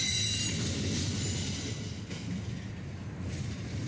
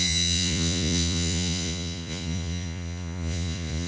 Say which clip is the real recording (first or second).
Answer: first